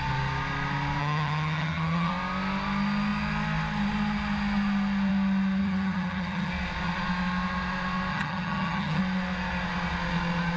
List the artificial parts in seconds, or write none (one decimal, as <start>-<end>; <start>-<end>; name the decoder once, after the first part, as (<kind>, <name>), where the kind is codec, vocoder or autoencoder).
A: 1.0-2.1 (vocoder, HiFi-GAN); 5.6-6.5; 8.1-9.0